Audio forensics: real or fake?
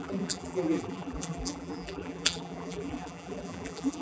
fake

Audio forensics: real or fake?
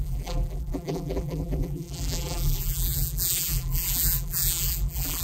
fake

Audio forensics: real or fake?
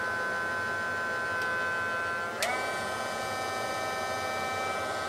real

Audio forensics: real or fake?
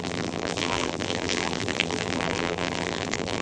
fake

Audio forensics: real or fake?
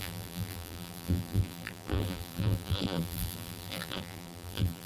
fake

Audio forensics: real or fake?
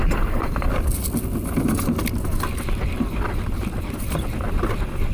real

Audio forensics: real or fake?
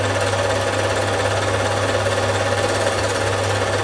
real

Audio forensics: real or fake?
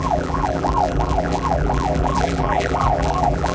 fake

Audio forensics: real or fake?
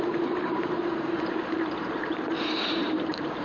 fake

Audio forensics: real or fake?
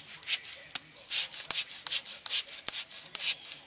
real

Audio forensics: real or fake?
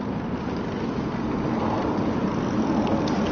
real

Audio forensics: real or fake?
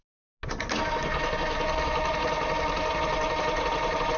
real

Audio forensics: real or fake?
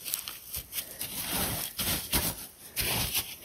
fake